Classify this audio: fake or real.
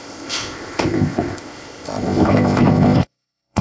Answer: fake